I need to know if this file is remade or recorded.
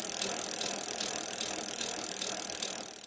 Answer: recorded